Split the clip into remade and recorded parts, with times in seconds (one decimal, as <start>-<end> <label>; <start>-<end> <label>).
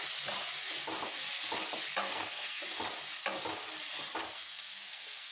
0.0-2.0 recorded; 2.0-2.6 remade; 2.6-4.2 recorded; 4.2-5.3 remade